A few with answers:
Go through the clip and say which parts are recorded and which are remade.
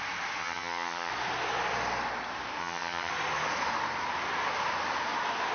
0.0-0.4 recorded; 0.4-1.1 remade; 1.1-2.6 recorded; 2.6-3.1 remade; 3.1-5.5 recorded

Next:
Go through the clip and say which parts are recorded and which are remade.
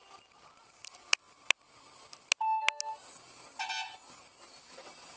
0.0-5.2 recorded